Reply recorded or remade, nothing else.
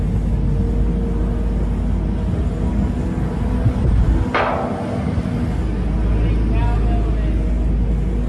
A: recorded